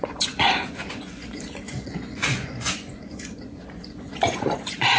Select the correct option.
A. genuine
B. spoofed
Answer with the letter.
B